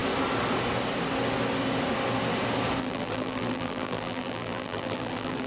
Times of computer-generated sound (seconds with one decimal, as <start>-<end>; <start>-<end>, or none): 2.8-5.5